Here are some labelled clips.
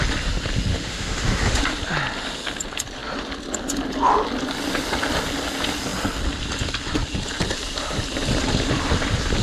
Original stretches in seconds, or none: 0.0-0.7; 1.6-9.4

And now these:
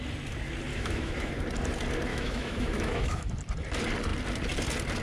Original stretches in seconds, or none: 0.0-0.7; 1.3-2.1; 3.3-5.0

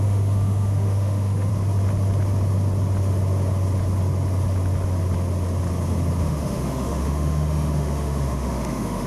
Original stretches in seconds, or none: 1.5-6.2

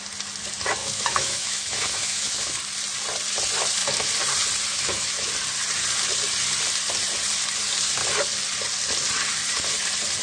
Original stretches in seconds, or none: 0.0-0.8; 2.6-4.7; 5.3-10.2

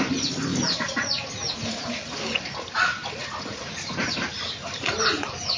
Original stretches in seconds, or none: 0.0-5.6

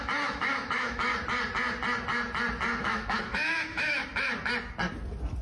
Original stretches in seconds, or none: 1.1-2.8; 4.0-5.4

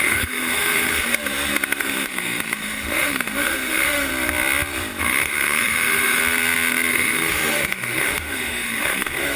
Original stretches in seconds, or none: 1.1-1.8; 4.1-5.0; 6.2-6.9